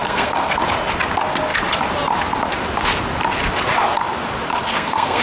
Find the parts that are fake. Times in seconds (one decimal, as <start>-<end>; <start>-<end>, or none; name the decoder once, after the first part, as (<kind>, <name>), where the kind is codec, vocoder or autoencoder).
0.0-0.5 (codec, SNAC); 4.5-5.2

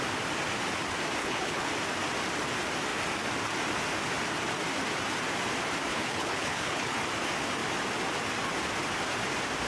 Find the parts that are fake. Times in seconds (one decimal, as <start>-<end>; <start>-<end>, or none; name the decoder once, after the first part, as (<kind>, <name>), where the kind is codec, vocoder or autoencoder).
1.2-1.7 (codec, HILCodec); 5.9-7.0

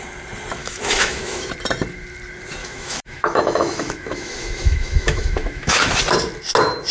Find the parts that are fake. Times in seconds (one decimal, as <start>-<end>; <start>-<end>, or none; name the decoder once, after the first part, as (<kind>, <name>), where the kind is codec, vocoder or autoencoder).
0.6-1.5 (autoencoder, DAC-VAE); 2.6-5.9

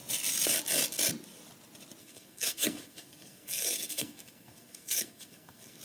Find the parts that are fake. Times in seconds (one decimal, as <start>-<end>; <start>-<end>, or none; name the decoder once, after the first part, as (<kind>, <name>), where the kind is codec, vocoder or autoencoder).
2.0-5.8 (codec, SNAC)